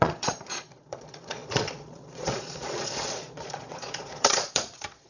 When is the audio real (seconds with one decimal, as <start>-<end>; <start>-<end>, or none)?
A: none